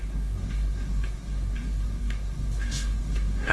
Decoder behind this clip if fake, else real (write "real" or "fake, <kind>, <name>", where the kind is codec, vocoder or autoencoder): fake, codec, SNAC